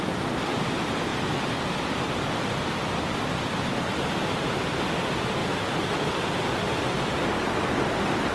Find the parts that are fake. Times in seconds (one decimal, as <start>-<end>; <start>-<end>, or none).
none